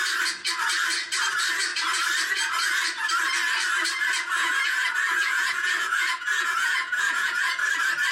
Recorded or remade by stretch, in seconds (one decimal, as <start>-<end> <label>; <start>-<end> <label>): 0.0-4.4 recorded; 4.4-7.6 remade; 7.6-8.1 recorded